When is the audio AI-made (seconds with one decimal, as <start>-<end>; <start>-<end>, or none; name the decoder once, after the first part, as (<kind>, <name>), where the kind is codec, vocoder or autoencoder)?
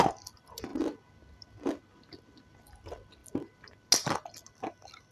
none